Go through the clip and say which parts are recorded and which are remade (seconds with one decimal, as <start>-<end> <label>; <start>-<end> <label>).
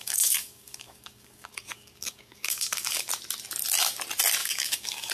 0.0-3.1 remade; 3.1-4.4 recorded; 4.4-5.1 remade